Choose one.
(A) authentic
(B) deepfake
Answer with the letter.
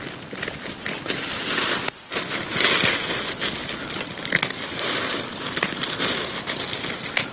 A